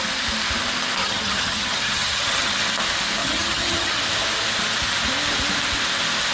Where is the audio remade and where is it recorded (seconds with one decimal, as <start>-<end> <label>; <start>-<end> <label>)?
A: 0.0-1.0 recorded; 1.0-2.6 remade; 2.6-3.2 recorded; 3.2-4.0 remade; 4.0-6.3 recorded